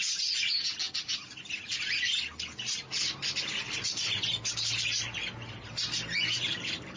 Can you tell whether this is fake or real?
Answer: real